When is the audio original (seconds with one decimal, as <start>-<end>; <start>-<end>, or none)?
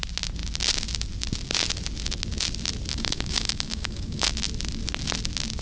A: 0.0-2.9; 4.3-5.6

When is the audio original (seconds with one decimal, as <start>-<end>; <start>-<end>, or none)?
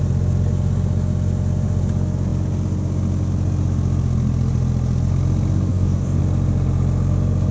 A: 0.0-5.7; 6.2-7.5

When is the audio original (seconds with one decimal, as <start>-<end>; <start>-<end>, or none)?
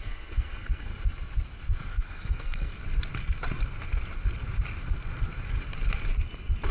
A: 0.9-1.9; 2.7-6.7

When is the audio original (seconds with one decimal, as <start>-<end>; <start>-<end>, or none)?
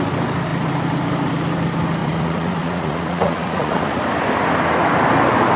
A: 0.0-2.0; 4.0-5.6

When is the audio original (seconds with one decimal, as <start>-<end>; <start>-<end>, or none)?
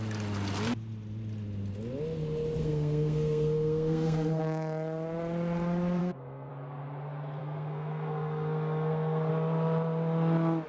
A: 0.0-2.6; 4.4-6.0; 6.5-7.4; 9.3-10.7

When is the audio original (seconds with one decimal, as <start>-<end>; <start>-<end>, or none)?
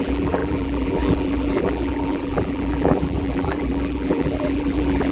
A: none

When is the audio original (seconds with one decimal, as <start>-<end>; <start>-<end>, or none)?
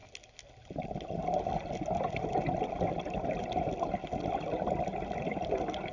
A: 0.0-5.9